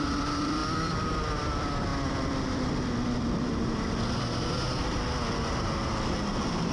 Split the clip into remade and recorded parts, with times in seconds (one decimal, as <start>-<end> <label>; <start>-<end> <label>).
0.0-6.7 remade